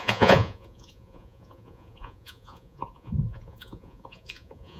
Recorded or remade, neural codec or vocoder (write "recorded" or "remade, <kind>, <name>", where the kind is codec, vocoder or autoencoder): remade, vocoder, Vocos